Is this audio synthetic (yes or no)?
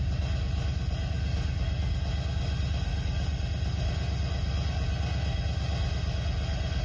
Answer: no